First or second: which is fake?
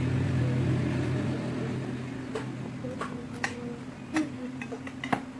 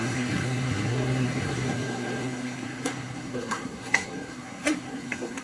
second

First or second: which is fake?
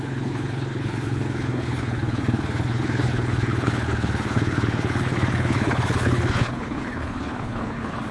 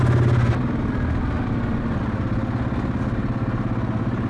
first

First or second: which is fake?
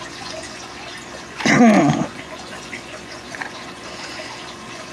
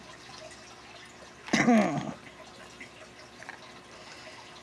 first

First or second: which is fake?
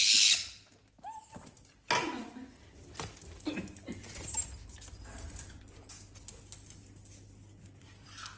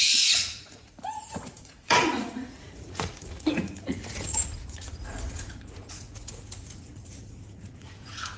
second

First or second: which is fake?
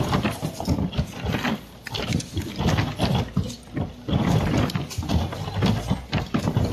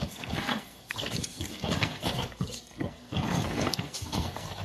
second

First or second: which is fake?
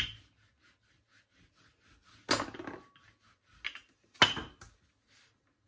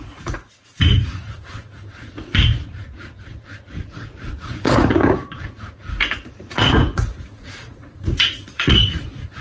second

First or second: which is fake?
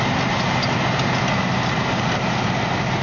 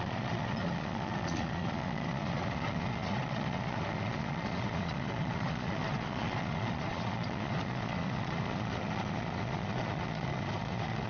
second